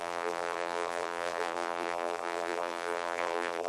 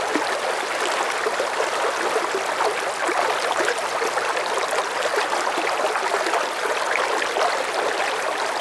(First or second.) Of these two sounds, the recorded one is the second